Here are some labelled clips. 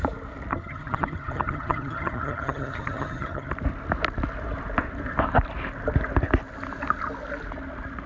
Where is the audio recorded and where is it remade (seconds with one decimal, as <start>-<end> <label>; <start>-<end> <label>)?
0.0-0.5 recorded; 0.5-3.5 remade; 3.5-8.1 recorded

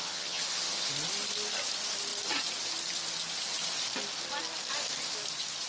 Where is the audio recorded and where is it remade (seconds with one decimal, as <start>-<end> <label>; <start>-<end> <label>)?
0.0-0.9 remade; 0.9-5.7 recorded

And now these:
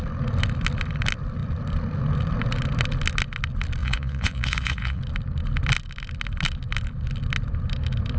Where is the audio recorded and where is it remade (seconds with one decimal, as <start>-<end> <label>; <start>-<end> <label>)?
0.0-3.8 recorded; 3.8-5.0 remade; 5.0-8.2 recorded

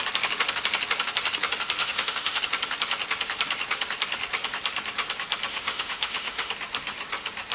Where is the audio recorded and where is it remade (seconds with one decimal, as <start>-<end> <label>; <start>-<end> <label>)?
0.0-1.8 recorded; 1.8-2.4 remade; 2.4-5.5 recorded; 5.5-6.5 remade; 6.5-7.5 recorded